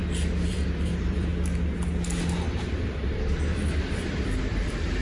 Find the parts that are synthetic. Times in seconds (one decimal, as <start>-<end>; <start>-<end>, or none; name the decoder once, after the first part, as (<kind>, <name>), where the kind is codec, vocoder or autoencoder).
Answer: 0.5-1.3 (vocoder, BigVGAN v2); 3.9-5.0